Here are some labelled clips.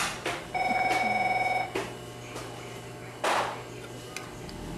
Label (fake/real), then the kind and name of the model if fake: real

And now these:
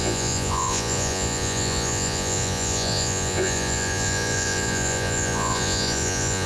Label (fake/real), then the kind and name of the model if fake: fake, vocoder, Vocos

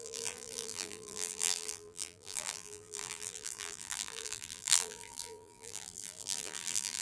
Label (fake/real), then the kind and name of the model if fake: fake, vocoder, BigVGAN v2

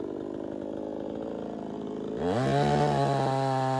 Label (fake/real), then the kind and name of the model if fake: real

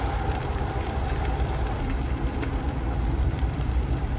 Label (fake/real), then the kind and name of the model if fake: fake, vocoder, BigVGAN v2